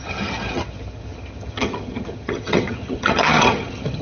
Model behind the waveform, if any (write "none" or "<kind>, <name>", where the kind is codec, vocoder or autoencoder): vocoder, HiFi-GAN